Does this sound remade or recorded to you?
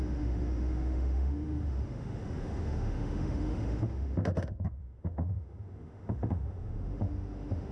remade